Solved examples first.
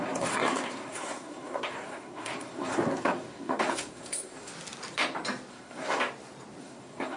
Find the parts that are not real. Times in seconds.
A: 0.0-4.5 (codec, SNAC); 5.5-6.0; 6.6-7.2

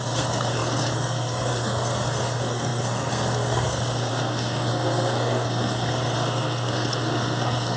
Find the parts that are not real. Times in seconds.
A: 0.0-7.8 (codec, SNAC)